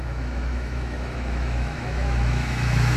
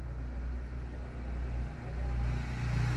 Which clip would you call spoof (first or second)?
first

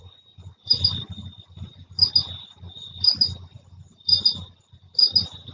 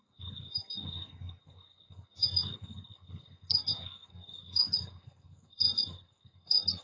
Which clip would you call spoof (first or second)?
second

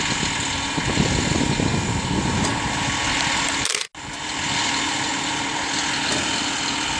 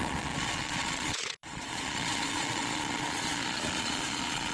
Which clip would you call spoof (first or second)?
second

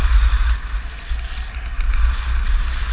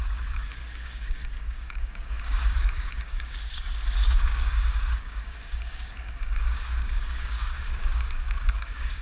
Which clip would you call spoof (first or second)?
second